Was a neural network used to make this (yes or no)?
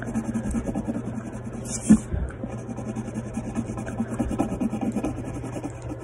no